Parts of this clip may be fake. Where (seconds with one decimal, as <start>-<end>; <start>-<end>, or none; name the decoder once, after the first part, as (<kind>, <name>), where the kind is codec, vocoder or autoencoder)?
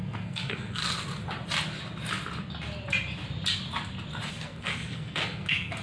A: 0.0-0.8 (codec, SNAC); 4.3-5.8